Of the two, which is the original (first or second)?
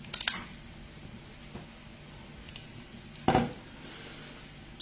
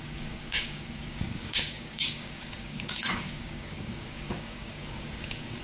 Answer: first